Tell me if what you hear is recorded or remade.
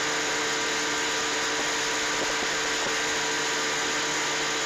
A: recorded